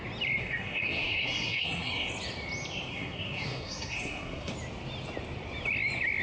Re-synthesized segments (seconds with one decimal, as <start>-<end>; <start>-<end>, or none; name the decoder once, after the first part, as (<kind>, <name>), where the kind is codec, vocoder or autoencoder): 0.4-2.1 (codec, SNAC); 2.9-4.5